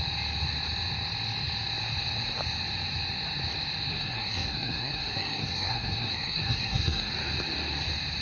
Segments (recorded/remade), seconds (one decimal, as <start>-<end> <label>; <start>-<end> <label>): 0.0-3.9 recorded; 3.9-7.1 remade; 7.1-8.2 recorded

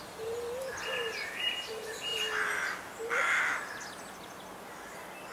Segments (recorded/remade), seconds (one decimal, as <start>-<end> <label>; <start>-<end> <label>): 0.0-5.3 recorded

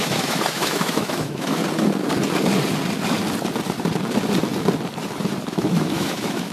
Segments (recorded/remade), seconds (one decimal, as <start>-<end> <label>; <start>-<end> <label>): 0.0-1.6 remade; 1.6-5.5 recorded; 5.5-6.5 remade